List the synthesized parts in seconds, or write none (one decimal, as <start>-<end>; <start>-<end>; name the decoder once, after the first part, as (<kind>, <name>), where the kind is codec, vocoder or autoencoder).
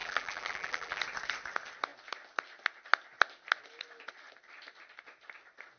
0.0-1.0 (vocoder, BigVGAN v2)